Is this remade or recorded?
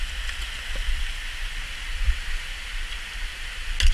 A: recorded